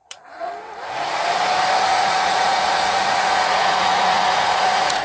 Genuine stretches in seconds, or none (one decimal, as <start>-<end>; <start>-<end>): 0.5-1.9